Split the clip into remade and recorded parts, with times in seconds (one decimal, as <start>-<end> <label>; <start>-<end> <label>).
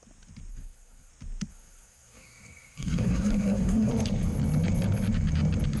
0.0-0.5 recorded; 0.5-1.1 remade; 1.1-1.5 recorded; 1.5-3.9 remade; 3.9-5.8 recorded